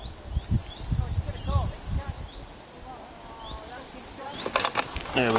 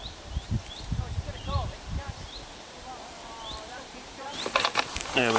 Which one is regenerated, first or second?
second